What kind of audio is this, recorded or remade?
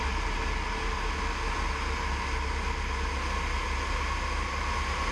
recorded